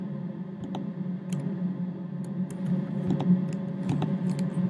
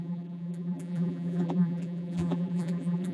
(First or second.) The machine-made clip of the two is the second